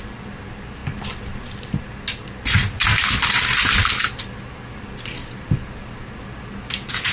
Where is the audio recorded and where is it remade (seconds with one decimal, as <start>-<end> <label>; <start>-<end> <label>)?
0.0-7.1 recorded